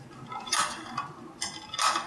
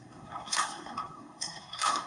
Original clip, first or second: first